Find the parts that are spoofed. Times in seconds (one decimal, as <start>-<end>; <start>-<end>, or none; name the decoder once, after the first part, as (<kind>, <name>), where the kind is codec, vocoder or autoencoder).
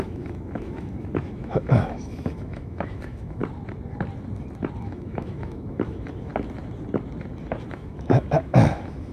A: 0.0-3.4 (autoencoder, DAC-VAE); 4.8-6.3; 7.7-9.1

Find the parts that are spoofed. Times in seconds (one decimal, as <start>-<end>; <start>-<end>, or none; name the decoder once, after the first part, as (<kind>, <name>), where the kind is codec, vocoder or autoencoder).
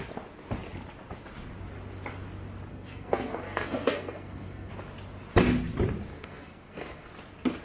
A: 2.7-4.7 (codec, SNAC); 6.1-7.1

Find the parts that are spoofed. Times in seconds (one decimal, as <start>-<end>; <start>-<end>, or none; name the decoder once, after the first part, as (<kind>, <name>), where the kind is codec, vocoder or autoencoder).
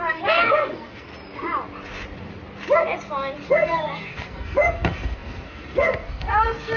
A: 0.0-1.1 (codec, SNAC); 3.5-6.8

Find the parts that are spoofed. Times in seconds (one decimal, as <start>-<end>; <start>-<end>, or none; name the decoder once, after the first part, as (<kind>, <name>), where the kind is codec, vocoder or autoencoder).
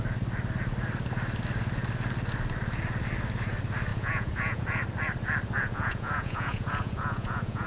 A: 3.9-4.6 (vocoder, Vocos); 5.6-7.7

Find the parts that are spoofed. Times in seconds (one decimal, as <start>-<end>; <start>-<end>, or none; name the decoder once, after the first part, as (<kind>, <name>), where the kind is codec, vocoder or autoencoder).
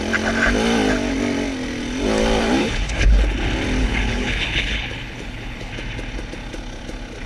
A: 2.6-3.1 (codec, HILCodec); 3.8-5.7